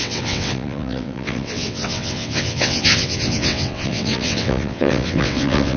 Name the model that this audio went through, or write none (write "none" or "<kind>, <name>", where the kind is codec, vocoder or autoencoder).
vocoder, WaveNeXt